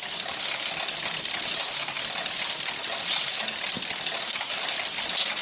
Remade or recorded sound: recorded